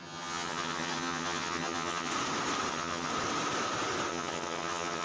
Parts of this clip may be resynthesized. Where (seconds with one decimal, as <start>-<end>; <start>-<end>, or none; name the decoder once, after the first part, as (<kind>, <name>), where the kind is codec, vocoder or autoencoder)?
0.0-2.1 (vocoder, HiFi-GAN); 2.7-3.1; 4.1-5.0